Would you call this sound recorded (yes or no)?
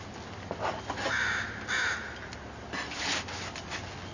yes